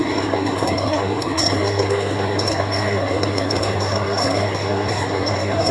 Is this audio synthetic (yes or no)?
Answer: yes